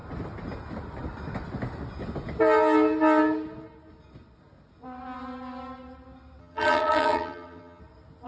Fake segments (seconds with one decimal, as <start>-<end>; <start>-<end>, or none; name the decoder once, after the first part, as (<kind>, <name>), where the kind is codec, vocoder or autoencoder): 6.4-7.8 (vocoder, HiFi-GAN)